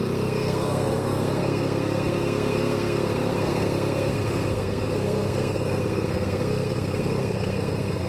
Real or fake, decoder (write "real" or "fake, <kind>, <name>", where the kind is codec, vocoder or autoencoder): fake, codec, SNAC